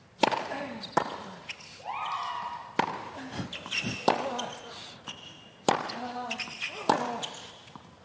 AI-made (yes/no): no